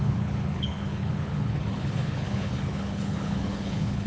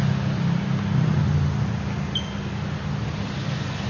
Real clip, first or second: second